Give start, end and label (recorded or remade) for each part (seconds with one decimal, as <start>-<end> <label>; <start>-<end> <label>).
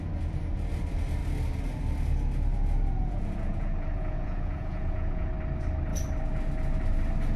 0.0-3.0 recorded; 3.0-5.3 remade; 5.3-7.4 recorded